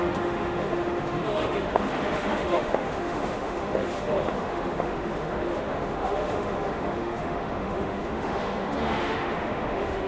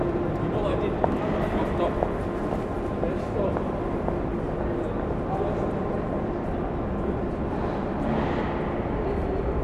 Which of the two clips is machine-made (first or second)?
first